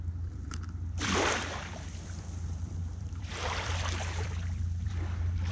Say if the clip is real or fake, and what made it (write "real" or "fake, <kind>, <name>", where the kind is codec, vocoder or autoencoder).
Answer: fake, vocoder, BigVGAN v2